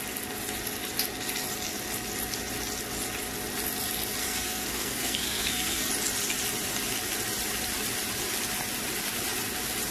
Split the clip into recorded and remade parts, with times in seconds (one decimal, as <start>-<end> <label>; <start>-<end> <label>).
0.0-4.2 recorded; 4.2-5.9 remade; 5.9-9.9 recorded